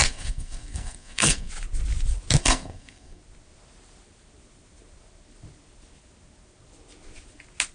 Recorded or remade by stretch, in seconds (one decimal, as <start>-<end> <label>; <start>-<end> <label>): 0.0-1.5 remade; 1.5-2.4 recorded; 2.4-3.2 remade; 3.2-7.7 recorded